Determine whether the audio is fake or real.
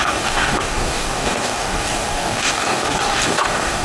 fake